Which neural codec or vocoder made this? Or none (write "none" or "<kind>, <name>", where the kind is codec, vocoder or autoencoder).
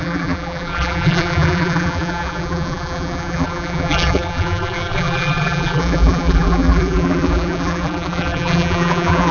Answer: vocoder, BigVGAN v2